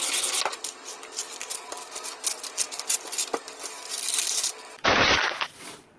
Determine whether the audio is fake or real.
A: real